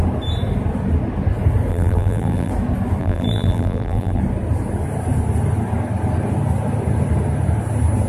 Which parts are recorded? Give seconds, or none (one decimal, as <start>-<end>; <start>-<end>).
0.0-1.7; 2.5-3.0; 4.2-8.1

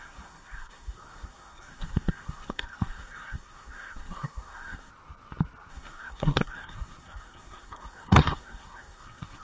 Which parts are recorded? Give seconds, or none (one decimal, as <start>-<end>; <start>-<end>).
4.9-5.7